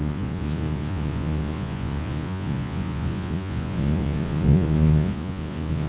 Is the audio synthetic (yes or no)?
yes